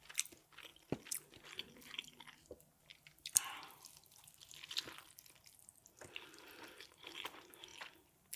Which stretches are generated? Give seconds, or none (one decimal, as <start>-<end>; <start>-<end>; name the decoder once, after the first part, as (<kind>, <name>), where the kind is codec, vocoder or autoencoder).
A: none